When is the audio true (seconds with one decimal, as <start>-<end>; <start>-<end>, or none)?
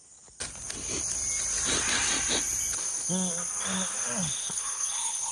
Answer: 0.0-4.4